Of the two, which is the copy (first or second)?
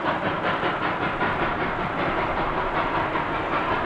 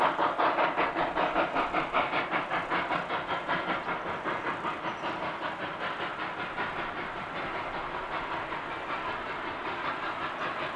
first